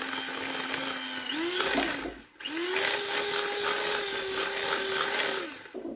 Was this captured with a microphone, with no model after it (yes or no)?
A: yes